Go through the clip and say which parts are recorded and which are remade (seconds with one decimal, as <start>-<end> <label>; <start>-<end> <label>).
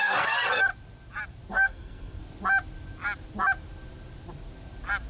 0.0-0.7 remade; 0.7-1.5 recorded; 1.5-2.2 remade; 2.2-5.1 recorded